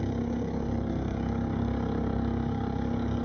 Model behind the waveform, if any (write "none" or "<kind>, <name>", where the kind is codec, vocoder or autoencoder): codec, DAC